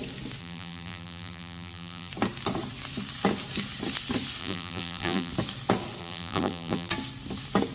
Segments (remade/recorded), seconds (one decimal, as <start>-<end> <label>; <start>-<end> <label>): 0.0-0.4 recorded; 0.4-2.1 remade; 2.1-4.4 recorded; 4.4-5.3 remade; 5.3-6.0 recorded; 6.0-6.9 remade; 6.9-7.7 recorded